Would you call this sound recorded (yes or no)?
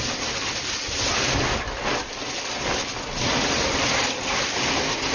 yes